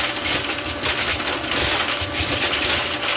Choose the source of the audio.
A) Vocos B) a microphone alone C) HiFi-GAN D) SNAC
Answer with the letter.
B